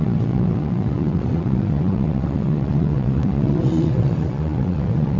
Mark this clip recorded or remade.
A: remade